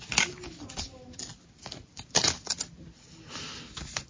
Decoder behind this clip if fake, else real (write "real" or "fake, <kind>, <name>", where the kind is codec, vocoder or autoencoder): real